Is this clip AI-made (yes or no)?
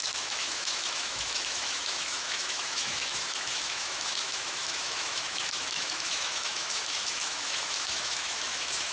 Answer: yes